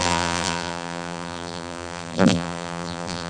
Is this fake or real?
fake